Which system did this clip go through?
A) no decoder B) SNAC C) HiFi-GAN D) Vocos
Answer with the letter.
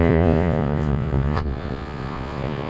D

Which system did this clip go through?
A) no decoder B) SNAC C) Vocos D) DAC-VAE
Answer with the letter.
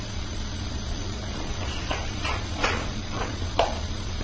C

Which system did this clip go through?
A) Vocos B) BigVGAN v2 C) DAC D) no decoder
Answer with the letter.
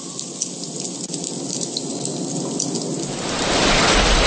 D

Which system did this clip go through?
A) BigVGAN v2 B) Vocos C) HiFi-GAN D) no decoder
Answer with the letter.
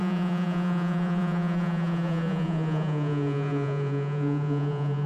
B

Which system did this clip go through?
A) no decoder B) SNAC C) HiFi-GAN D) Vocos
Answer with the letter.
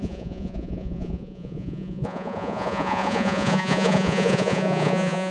D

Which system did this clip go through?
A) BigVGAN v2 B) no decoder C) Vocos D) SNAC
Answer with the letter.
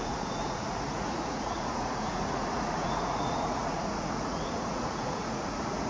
C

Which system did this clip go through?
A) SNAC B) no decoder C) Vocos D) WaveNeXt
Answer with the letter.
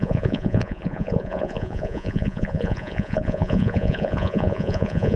C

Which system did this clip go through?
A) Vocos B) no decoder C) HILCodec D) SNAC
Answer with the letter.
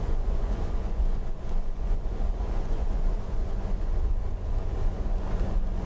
A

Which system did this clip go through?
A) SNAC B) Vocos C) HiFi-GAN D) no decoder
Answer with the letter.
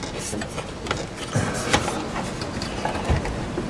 D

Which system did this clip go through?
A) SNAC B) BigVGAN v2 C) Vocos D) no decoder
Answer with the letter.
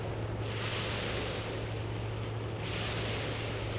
D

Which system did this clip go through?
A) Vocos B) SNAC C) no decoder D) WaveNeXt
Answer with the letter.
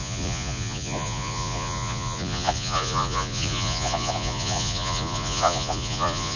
A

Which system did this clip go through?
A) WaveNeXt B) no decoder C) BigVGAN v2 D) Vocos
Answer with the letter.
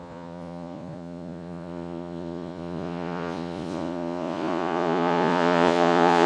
D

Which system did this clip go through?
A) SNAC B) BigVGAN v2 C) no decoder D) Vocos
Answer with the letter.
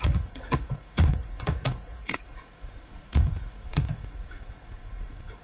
D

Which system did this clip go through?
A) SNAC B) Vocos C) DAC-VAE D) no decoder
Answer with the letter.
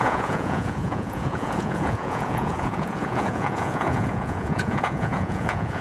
B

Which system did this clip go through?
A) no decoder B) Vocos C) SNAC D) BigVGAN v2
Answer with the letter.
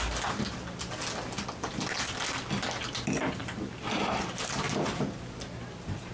A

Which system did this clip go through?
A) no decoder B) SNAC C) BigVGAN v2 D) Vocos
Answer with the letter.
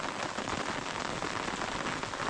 A